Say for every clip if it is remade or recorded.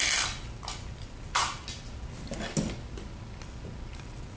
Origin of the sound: recorded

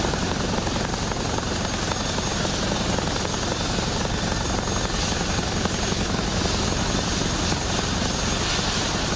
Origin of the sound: recorded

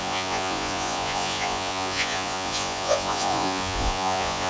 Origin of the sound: remade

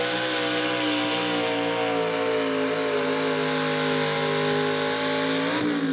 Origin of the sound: recorded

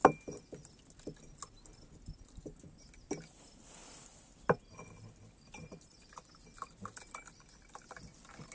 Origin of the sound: recorded